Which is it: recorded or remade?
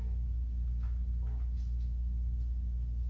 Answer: recorded